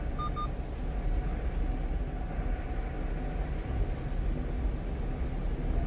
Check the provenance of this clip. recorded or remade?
recorded